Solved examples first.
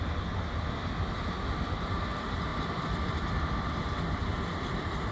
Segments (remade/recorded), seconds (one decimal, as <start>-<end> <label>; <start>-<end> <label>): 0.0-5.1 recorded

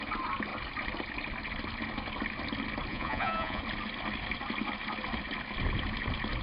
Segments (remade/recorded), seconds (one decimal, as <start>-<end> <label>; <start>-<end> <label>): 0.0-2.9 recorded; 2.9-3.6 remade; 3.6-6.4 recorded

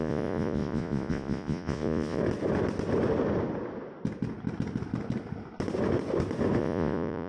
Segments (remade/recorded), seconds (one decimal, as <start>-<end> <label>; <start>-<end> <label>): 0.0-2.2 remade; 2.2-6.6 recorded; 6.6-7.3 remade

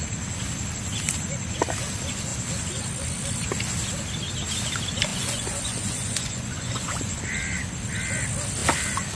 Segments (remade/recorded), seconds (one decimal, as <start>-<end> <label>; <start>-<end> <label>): 0.0-5.1 recorded; 5.1-7.2 remade; 7.2-9.1 recorded

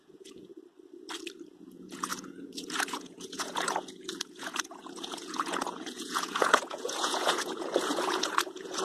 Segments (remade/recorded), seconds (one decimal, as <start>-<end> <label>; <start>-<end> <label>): 0.0-0.5 remade; 0.5-1.5 recorded; 1.5-8.8 remade